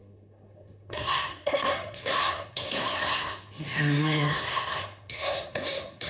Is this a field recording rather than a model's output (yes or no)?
no